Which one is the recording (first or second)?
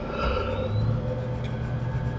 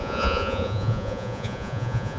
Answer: first